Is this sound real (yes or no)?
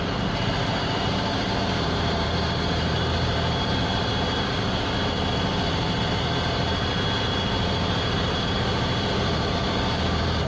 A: no